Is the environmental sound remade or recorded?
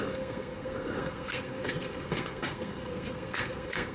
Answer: remade